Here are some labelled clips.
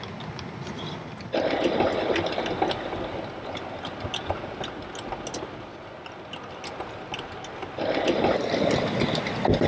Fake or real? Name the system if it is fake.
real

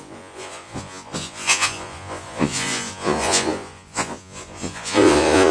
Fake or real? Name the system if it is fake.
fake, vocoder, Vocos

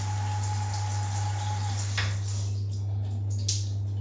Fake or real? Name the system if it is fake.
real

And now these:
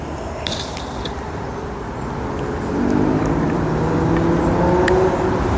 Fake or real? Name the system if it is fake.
real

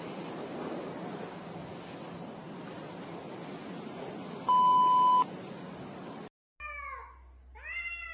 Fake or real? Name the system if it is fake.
real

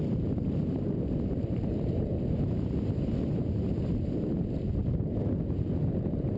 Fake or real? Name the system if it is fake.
real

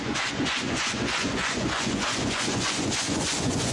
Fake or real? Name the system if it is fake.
fake, vocoder, Vocos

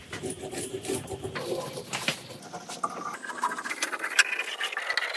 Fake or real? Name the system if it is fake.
real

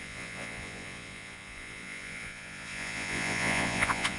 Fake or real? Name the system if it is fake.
fake, vocoder, Vocos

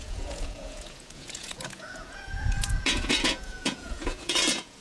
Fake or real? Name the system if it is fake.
fake, vocoder, Vocos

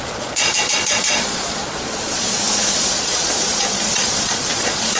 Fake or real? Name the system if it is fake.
fake, vocoder, Vocos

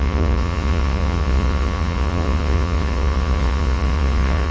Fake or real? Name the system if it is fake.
fake, vocoder, Vocos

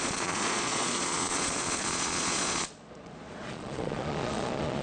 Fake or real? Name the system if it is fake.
fake, vocoder, Vocos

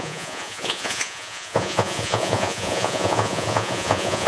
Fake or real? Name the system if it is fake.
fake, vocoder, Vocos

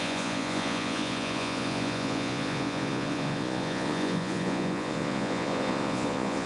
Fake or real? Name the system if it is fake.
fake, vocoder, Vocos